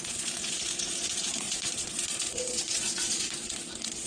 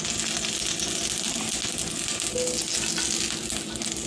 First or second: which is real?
second